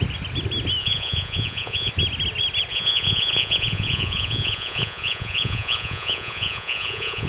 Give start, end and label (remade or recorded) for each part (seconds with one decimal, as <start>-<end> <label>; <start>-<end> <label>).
0.0-0.8 recorded; 0.8-1.9 remade; 1.9-2.7 recorded; 2.7-7.3 remade